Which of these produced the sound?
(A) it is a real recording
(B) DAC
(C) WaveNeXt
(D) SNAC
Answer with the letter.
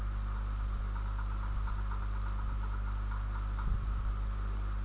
A